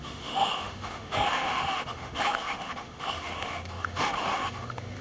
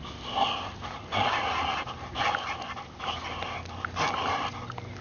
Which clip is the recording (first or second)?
second